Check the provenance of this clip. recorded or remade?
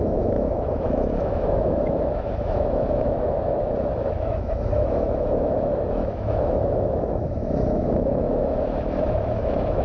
remade